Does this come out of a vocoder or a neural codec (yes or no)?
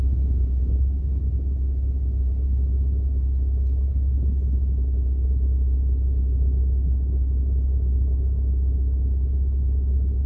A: no